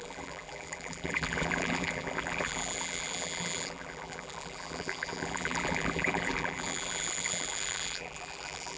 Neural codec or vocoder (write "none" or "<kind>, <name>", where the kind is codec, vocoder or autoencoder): vocoder, BigVGAN v2